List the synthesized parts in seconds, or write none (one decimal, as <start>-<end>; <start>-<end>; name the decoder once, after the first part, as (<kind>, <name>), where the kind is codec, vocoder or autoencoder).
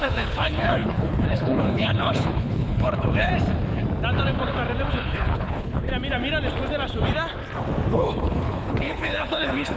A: 0.0-3.3 (codec, HILCodec); 4.9-5.9; 7.9-9.8